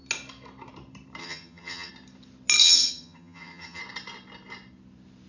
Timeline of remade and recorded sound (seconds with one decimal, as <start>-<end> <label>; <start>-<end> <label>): 0.0-1.2 recorded; 1.2-1.9 remade; 1.9-2.6 recorded; 2.6-3.8 remade; 3.8-5.3 recorded